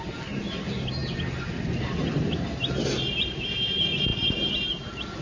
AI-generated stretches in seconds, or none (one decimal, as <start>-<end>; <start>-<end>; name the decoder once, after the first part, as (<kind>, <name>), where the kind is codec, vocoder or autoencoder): none